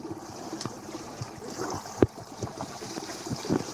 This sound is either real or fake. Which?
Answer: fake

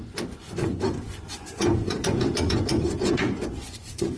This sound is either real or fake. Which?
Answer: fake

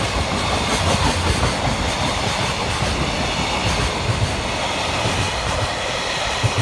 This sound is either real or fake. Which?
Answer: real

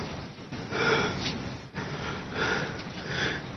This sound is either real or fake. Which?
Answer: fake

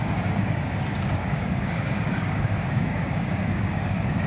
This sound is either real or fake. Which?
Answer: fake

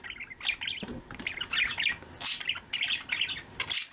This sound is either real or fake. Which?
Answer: fake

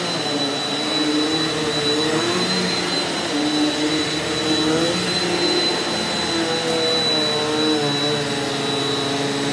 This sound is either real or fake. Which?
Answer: real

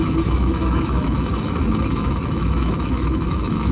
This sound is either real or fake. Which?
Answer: fake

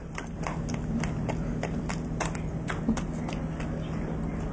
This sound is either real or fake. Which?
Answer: real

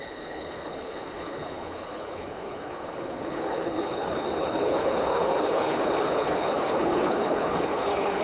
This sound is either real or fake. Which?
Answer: fake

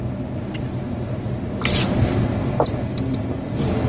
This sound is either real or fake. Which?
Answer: real